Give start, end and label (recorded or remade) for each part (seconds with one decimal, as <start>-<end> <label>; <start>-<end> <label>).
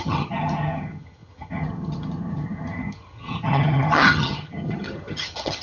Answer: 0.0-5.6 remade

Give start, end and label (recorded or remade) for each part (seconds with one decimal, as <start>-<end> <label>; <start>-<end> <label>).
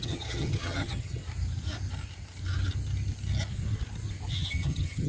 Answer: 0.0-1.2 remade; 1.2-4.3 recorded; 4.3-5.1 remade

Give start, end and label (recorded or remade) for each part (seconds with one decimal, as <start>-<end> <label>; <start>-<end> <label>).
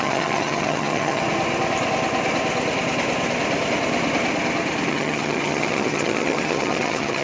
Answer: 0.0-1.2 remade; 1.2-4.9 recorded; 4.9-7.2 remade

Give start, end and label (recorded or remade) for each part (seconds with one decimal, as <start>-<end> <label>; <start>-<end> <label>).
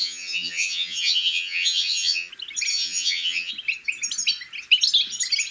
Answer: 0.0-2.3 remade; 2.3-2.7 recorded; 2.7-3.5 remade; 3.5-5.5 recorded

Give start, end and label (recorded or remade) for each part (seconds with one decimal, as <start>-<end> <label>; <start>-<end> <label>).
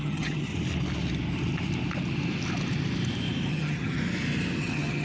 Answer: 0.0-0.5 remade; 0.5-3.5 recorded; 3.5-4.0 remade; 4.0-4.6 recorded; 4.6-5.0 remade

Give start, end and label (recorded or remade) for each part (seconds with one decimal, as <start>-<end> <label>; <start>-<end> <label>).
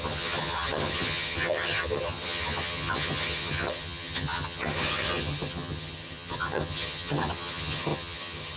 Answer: 0.0-8.6 remade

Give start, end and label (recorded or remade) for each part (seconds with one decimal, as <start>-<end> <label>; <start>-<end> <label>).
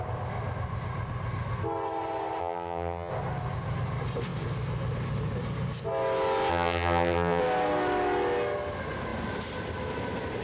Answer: 0.0-2.4 recorded; 2.4-3.1 remade; 3.1-6.5 recorded; 6.5-7.4 remade; 7.4-10.4 recorded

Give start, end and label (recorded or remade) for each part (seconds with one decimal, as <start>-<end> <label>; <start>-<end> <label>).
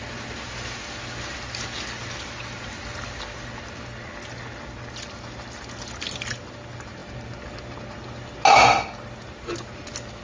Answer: 0.0-10.2 recorded